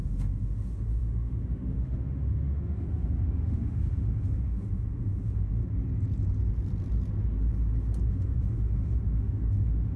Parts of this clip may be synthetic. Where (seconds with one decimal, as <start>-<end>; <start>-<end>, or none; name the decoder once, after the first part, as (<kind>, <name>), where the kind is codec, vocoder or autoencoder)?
0.0-5.6 (autoencoder, DAC-VAE); 8.1-10.0

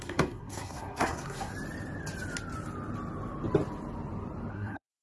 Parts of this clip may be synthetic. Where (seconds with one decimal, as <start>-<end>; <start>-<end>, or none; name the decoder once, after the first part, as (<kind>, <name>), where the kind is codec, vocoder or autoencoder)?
0.0-1.5 (codec, SNAC); 4.5-5.0

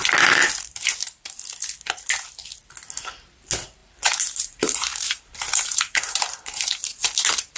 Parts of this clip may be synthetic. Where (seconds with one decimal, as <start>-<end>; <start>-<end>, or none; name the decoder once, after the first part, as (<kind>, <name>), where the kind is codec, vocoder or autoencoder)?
3.8-7.6 (vocoder, BigVGAN v2)

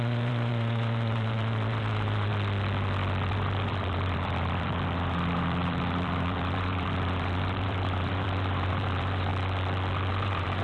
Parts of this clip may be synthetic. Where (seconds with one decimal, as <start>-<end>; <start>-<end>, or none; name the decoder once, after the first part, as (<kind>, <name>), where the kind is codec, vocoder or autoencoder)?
0.0-2.3 (vocoder, BigVGAN v2); 3.3-9.3; 10.1-10.6

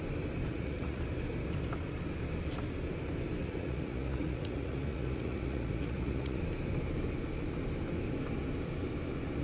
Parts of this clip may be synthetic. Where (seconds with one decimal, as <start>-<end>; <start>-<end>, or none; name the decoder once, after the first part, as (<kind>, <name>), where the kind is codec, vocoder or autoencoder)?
0.5-1.0 (vocoder, Vocos); 3.4-6.4

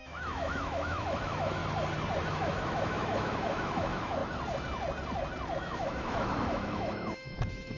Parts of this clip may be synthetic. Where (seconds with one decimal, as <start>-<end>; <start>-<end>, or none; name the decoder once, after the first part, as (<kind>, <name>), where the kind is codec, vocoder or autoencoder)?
0.0-1.6 (autoencoder, DAC-VAE); 2.3-4.2; 5.6-7.8